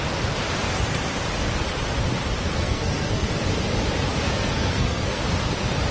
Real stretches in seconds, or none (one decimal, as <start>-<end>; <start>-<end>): 0.0-2.5; 3.3-4.1; 5.2-5.9